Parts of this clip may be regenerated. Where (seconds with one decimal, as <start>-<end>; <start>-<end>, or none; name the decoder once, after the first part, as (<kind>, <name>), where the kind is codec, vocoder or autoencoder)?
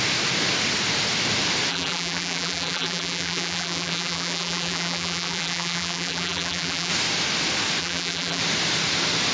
1.7-6.9 (vocoder, BigVGAN v2); 7.8-8.4